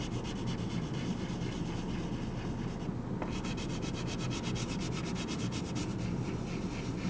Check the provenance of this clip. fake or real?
real